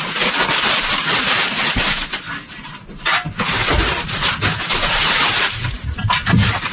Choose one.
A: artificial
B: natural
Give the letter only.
B